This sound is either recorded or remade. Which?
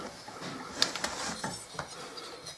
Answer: recorded